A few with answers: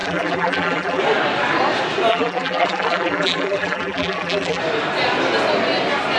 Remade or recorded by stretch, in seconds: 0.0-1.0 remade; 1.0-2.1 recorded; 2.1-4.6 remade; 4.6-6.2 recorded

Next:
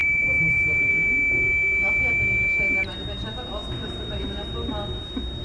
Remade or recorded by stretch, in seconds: 0.0-0.9 remade; 0.9-5.4 recorded

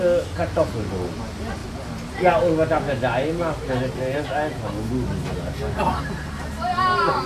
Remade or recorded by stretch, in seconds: 0.0-7.3 recorded

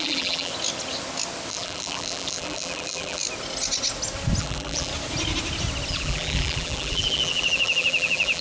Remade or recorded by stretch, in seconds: 0.0-0.5 remade; 0.5-1.5 recorded; 1.5-3.2 remade; 3.2-4.4 recorded; 4.4-4.9 remade; 4.9-5.9 recorded; 5.9-8.4 remade

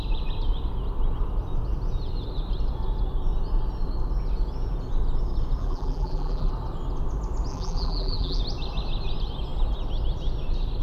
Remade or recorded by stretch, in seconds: 0.0-5.6 recorded; 5.6-6.5 remade; 6.5-7.5 recorded; 7.5-8.4 remade; 8.4-10.8 recorded

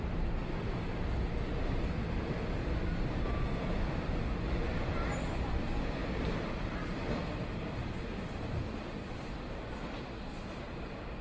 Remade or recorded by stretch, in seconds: 0.0-6.0 recorded; 6.0-7.1 remade; 7.1-11.2 recorded